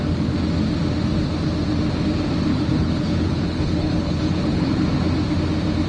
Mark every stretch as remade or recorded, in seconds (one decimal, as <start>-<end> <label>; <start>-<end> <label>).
0.0-2.5 recorded; 2.5-4.7 remade; 4.7-5.9 recorded

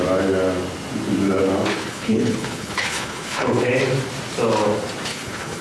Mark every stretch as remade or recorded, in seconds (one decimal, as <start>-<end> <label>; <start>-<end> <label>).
0.0-1.7 recorded; 1.7-3.7 remade; 3.7-5.1 recorded; 5.1-5.6 remade

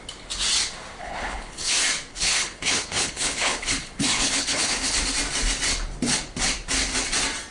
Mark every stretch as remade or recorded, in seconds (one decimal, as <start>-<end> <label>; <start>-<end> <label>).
0.0-1.0 recorded; 1.0-1.7 remade; 1.7-2.1 recorded; 2.1-5.0 remade; 5.0-7.5 recorded

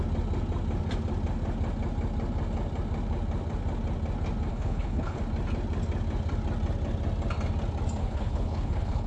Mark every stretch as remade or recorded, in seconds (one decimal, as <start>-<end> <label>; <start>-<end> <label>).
0.0-4.5 recorded; 4.5-5.2 remade; 5.2-8.0 recorded; 8.0-9.1 remade